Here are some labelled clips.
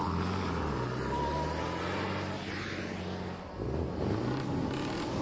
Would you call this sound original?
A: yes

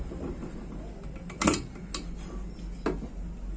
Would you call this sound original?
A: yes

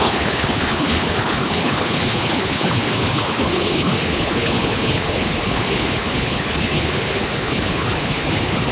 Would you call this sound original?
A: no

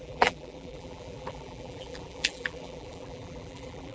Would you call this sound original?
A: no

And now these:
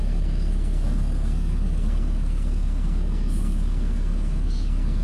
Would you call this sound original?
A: no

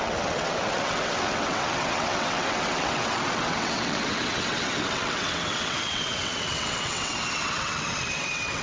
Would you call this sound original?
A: no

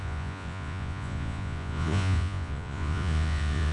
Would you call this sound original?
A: no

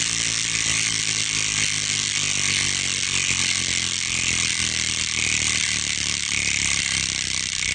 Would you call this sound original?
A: yes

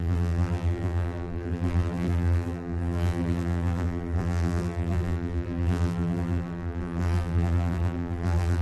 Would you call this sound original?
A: no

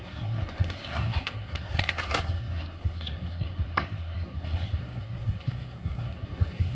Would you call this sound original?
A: no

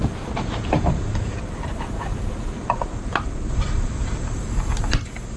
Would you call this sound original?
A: no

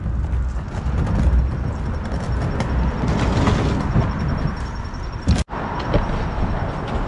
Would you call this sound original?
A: yes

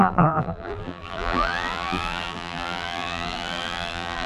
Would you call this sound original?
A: no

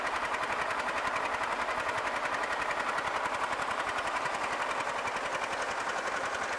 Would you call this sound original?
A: yes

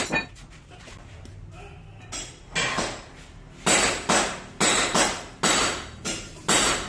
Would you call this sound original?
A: yes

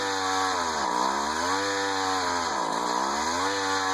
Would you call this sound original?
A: yes